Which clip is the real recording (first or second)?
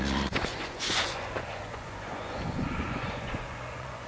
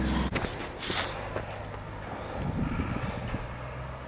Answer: second